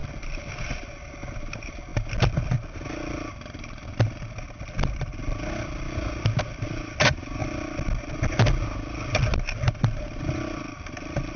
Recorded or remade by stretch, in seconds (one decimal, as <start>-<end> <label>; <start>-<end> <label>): 0.0-11.4 recorded